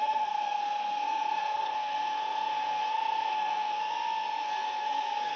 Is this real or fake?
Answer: fake